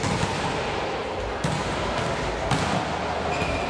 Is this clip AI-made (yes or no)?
no